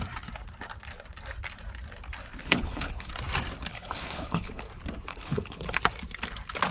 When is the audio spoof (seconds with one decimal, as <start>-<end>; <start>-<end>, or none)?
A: 2.4-3.1; 3.7-4.6; 5.1-5.8